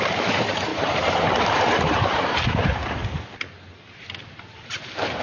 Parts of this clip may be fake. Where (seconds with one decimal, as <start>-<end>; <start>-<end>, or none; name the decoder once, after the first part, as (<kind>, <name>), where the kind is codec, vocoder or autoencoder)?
0.0-3.0 (vocoder, BigVGAN v2); 4.2-5.2